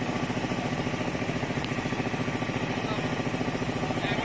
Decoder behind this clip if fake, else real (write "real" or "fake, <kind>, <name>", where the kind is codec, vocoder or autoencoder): real